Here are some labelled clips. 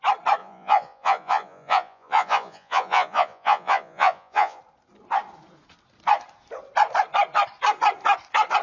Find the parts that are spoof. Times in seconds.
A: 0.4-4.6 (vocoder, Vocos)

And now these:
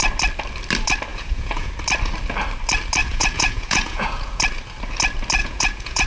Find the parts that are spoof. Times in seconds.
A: 1.1-1.7 (vocoder, Vocos); 3.0-4.4; 5.4-6.1

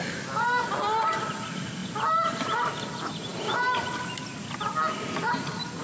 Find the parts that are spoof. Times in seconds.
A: none

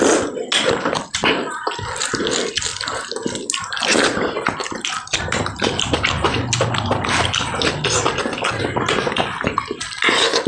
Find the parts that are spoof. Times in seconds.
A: none

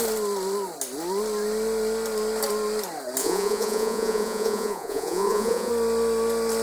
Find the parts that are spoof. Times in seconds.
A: 3.2-5.7 (vocoder, Vocos)

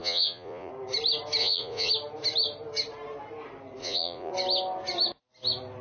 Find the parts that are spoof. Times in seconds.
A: 0.0-0.7 (vocoder, Vocos); 1.4-1.9; 3.8-4.3

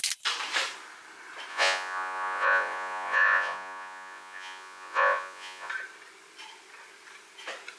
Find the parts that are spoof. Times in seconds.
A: 1.5-5.7 (vocoder, Vocos)

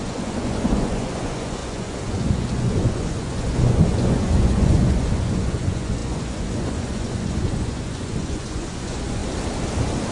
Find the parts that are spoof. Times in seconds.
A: 0.0-9.2 (vocoder, Vocos)